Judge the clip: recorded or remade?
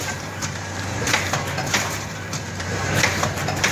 remade